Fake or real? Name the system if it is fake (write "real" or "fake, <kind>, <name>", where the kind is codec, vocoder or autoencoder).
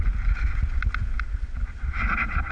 real